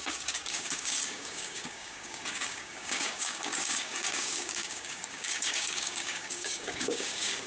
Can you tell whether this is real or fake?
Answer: fake